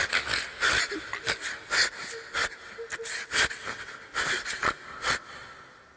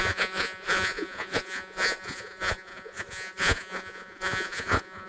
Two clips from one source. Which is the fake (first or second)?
second